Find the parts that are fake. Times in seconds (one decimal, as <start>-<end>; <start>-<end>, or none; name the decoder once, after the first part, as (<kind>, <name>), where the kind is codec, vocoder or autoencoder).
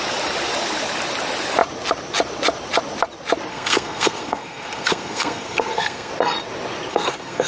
3.5-6.1 (codec, SNAC); 6.9-7.5